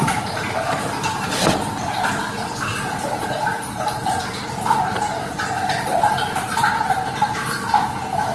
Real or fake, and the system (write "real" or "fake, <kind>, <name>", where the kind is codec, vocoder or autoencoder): fake, vocoder, BigVGAN v2